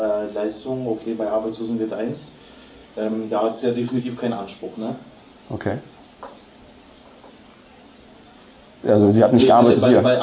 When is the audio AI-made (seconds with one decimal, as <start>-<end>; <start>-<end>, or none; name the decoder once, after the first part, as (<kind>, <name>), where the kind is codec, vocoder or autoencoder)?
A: 1.0-1.6 (codec, DAC); 2.8-4.0; 4.5-5.2; 8.8-9.5